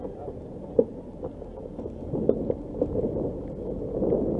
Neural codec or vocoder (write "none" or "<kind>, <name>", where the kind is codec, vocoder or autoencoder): none